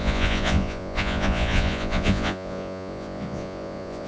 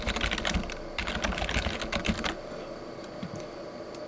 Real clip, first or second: second